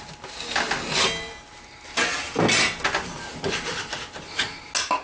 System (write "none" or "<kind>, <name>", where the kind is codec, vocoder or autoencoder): none